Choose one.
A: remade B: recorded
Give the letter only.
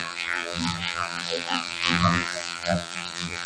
A